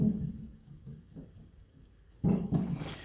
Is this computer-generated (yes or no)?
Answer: yes